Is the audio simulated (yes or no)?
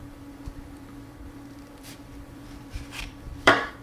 yes